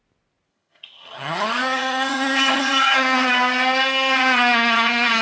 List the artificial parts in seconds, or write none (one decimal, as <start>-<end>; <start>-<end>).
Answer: 0.5-3.3; 4.2-5.2